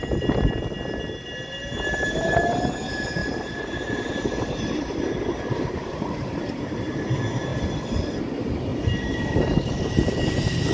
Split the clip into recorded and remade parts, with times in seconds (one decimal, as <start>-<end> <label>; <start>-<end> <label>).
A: 0.0-3.2 recorded; 3.2-7.0 remade; 7.0-7.5 recorded; 7.5-8.1 remade; 8.1-8.7 recorded; 8.7-10.7 remade